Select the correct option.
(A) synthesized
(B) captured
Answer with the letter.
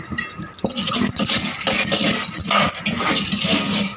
B